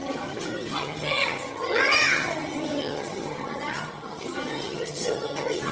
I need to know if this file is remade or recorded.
remade